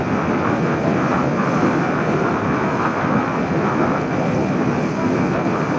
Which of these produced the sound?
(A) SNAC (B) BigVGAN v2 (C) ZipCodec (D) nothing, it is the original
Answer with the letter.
D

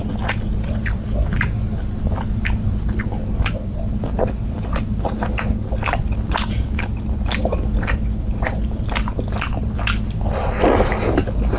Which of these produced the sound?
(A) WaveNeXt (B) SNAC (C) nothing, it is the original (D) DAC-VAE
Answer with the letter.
C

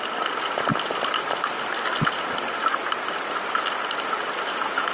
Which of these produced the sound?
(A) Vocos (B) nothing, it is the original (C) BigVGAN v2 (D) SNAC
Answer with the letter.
B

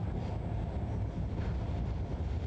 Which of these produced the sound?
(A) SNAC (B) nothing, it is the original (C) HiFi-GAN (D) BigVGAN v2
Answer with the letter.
B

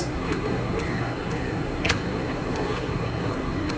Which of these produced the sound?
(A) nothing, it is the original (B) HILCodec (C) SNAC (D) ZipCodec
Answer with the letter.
C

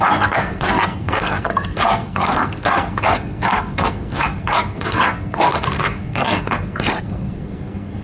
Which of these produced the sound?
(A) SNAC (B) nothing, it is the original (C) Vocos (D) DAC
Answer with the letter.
A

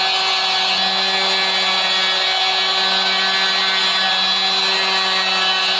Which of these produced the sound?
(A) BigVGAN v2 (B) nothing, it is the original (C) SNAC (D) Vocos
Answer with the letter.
B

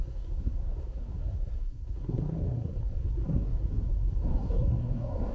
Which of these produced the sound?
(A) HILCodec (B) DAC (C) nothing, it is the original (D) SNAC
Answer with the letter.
D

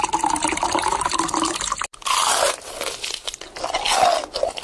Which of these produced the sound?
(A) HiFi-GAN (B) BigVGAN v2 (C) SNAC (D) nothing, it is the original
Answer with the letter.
D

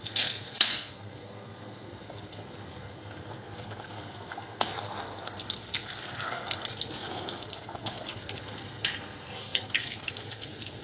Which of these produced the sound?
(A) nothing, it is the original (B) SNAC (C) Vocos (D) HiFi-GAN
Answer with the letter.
B